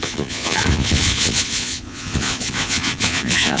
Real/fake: fake